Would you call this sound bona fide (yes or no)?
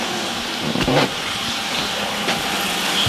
yes